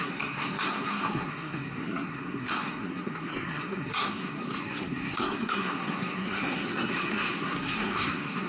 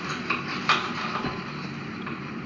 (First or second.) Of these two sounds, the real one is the second